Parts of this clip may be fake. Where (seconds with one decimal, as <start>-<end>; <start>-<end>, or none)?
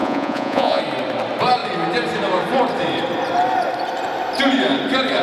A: 0.0-0.8